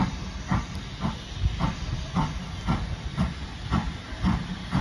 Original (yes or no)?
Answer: yes